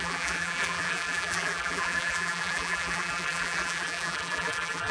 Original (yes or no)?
no